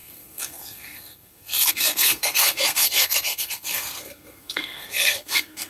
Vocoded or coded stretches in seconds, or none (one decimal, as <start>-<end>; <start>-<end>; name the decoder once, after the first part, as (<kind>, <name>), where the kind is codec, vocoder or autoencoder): 0.0-5.7 (codec, SNAC)